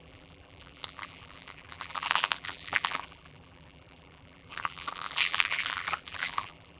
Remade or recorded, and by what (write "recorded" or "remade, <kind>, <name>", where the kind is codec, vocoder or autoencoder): remade, vocoder, BigVGAN v2